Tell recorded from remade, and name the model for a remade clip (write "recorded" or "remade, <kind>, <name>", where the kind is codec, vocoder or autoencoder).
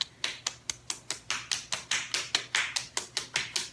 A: recorded